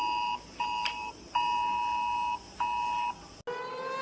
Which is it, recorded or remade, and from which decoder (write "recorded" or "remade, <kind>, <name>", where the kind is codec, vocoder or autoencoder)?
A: recorded